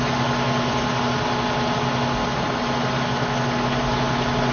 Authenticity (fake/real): real